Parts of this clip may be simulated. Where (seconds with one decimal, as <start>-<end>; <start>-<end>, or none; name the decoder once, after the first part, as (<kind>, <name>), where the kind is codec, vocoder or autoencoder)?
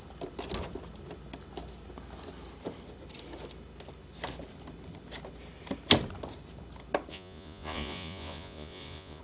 7.1-9.2 (vocoder, Vocos)